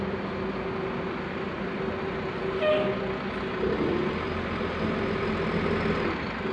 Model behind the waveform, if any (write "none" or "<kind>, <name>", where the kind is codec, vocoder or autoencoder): none